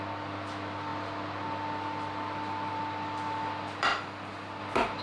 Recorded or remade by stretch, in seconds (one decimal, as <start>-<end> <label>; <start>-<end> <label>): 0.0-0.9 remade; 0.9-2.7 recorded; 2.7-3.9 remade; 3.9-4.6 recorded; 4.6-5.0 remade